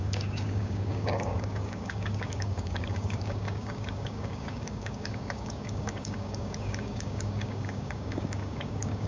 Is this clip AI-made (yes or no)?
yes